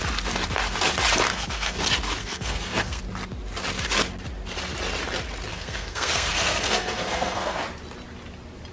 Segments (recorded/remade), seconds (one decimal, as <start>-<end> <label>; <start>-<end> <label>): 0.0-1.3 recorded; 1.3-1.8 remade; 1.8-2.2 recorded; 2.2-3.0 remade; 3.0-5.5 recorded; 5.5-7.6 remade; 7.6-8.7 recorded